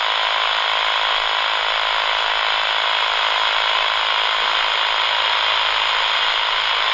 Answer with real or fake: real